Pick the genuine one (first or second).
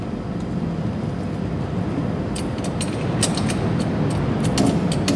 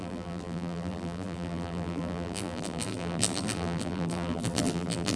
first